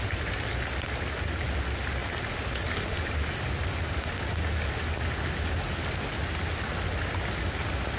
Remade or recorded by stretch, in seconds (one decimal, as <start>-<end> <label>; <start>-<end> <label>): 0.0-8.0 recorded